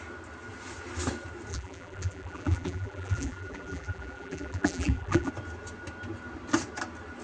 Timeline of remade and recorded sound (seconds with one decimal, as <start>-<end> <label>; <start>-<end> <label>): 0.0-1.5 recorded; 1.5-5.3 remade; 5.3-7.2 recorded